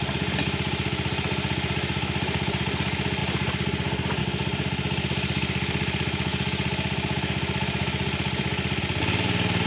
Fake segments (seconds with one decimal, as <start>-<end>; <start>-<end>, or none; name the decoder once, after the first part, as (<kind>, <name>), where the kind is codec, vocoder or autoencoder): none